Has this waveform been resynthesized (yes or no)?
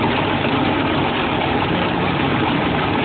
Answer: no